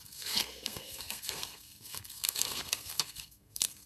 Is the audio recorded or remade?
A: remade